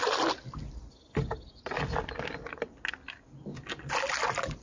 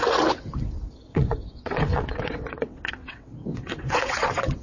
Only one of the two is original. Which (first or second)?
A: first